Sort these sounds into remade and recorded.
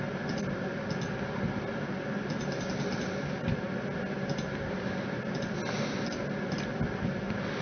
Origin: recorded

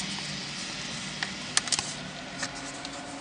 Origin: recorded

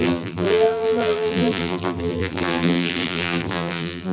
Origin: remade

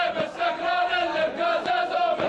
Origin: recorded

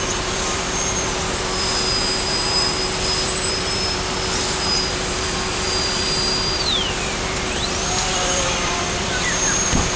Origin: remade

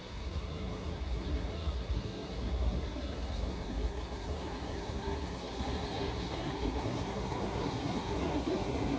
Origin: remade